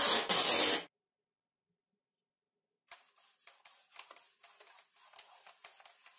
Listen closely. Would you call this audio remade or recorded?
recorded